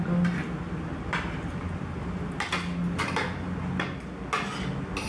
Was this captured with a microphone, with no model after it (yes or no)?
yes